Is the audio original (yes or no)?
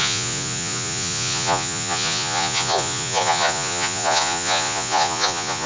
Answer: no